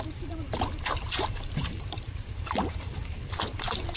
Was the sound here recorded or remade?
remade